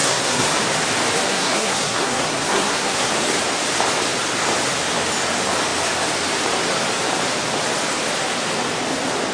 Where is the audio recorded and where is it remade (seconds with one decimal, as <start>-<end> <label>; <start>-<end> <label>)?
0.0-0.6 remade; 0.6-1.3 recorded; 1.3-3.1 remade; 3.1-9.3 recorded